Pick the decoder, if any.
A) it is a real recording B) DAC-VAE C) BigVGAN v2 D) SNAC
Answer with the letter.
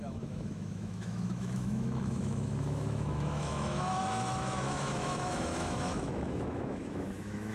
B